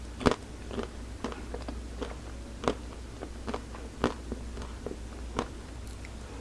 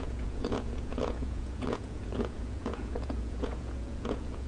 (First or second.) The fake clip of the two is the second